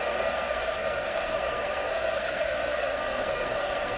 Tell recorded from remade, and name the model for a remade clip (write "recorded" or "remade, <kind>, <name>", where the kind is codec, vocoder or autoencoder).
remade, codec, SNAC